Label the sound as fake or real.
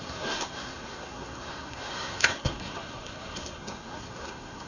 fake